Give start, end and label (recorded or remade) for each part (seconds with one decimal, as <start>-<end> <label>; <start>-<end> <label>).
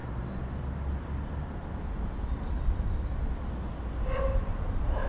0.0-4.5 recorded; 4.5-5.1 remade